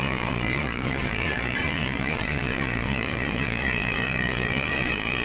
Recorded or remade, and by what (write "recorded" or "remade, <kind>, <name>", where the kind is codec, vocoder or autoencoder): remade, vocoder, Vocos